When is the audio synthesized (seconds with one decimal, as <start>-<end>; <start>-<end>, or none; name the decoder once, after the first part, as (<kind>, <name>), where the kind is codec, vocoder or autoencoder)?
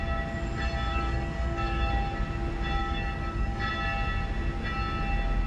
0.9-1.9 (codec, DAC); 2.8-3.7